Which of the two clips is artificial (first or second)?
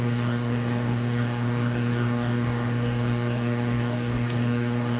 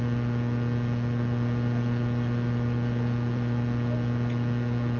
first